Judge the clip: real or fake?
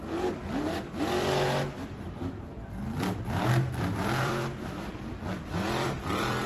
fake